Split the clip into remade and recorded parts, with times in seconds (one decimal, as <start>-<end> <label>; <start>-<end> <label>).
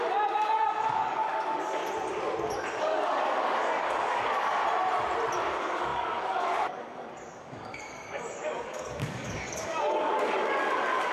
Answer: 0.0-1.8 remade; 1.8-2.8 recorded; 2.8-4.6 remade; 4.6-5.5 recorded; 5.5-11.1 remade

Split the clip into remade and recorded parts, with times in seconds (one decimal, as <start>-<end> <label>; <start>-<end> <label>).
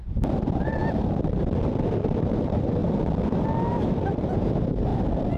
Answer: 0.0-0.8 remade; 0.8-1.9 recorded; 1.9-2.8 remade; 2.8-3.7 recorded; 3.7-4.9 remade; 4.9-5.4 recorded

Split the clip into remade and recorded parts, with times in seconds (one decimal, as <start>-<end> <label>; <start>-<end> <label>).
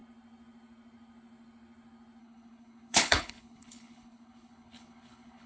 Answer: 0.0-2.2 recorded; 2.2-5.5 remade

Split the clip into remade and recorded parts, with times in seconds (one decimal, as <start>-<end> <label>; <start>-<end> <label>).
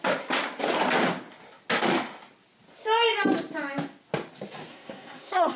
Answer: 0.0-4.7 recorded; 4.7-5.6 remade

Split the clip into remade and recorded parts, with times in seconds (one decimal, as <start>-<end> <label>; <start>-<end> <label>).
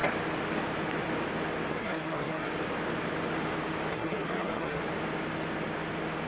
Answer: 0.0-1.7 recorded; 1.7-2.5 remade; 2.5-3.9 recorded; 3.9-4.8 remade; 4.8-6.3 recorded